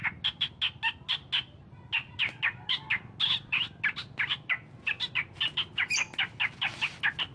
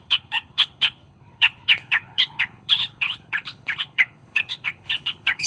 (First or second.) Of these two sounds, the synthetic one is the second